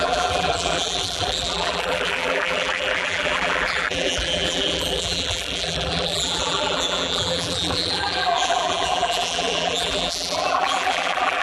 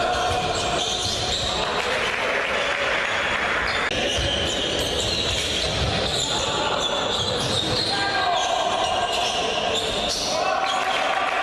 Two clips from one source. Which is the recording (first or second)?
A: second